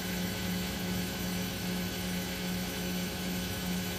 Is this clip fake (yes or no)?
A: yes